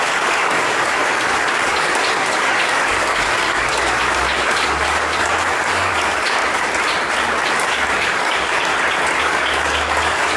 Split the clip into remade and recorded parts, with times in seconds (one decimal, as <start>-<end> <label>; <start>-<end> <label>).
0.0-6.4 remade; 6.4-7.5 recorded; 7.5-8.7 remade; 8.7-9.2 recorded; 9.2-10.4 remade